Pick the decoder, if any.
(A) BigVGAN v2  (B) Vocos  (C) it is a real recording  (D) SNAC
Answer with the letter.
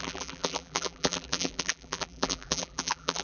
A